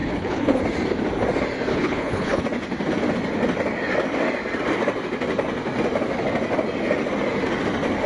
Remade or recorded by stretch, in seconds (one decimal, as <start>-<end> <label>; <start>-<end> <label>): 0.0-0.6 remade; 0.6-1.7 recorded; 1.7-2.4 remade; 2.4-8.1 recorded